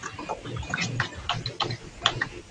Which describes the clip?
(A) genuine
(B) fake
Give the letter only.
A